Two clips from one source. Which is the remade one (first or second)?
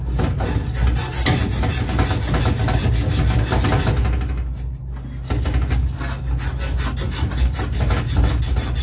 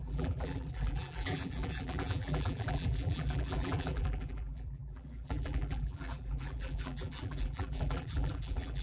second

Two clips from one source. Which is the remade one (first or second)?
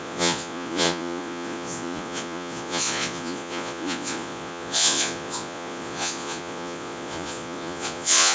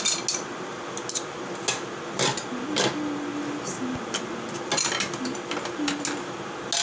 first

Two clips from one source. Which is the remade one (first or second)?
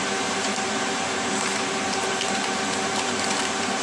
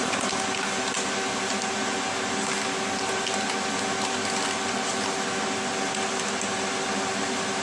first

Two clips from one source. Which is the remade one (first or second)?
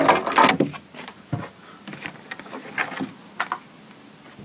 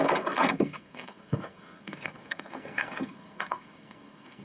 second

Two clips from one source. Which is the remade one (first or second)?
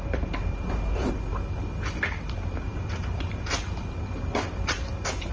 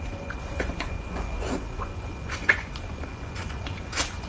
second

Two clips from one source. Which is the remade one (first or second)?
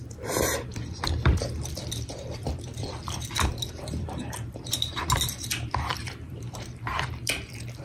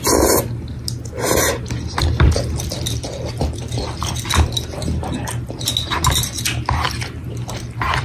first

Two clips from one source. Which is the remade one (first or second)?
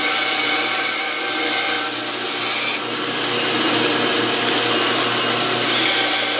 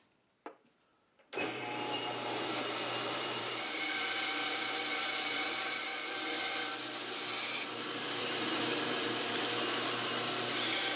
second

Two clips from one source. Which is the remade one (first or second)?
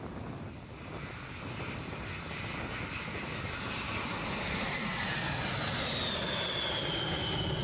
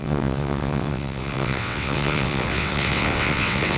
second